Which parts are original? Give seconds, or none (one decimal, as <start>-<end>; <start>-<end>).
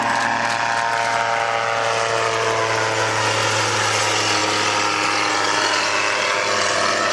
0.0-7.1